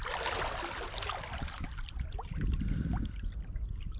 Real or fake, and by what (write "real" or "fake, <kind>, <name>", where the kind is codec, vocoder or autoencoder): real